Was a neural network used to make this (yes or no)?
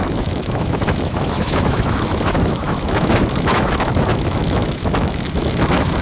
yes